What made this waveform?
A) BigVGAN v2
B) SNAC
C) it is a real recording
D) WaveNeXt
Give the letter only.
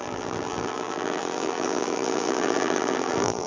A